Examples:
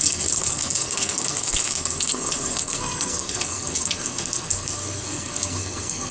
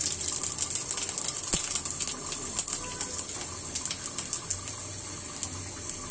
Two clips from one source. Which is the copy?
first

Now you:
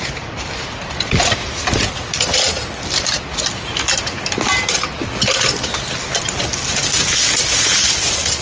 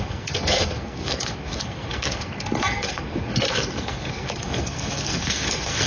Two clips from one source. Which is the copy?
second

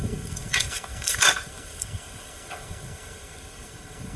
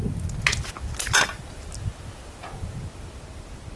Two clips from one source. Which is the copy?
first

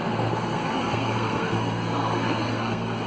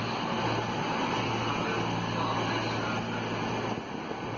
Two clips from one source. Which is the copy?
first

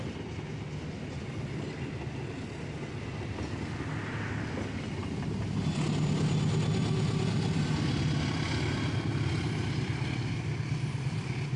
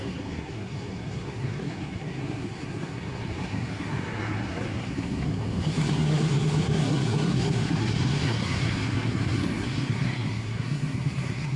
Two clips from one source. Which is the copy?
second